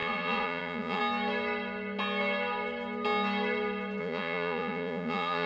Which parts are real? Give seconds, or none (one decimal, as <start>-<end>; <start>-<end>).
1.0-4.0